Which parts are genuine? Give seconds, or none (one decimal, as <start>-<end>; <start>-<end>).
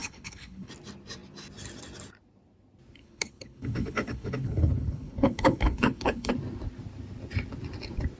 0.7-3.0; 6.3-8.2